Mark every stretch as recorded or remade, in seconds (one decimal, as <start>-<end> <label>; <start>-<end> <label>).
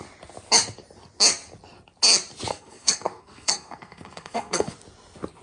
0.0-2.5 recorded; 2.5-4.7 remade; 4.7-5.4 recorded